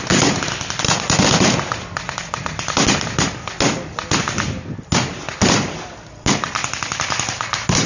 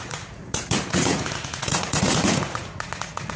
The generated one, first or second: second